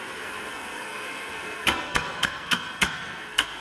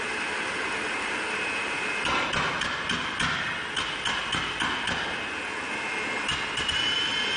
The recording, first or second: second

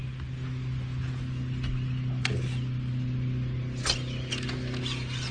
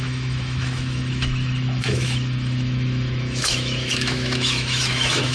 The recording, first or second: first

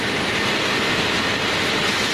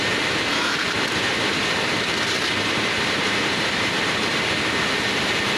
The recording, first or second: first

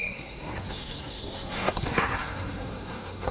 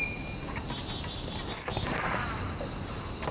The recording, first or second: second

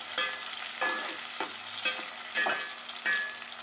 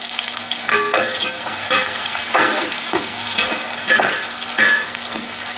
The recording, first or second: first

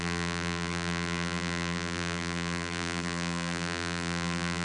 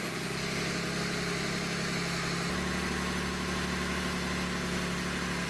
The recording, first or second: second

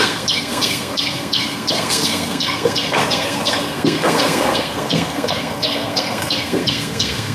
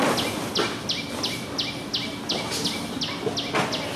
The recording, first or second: second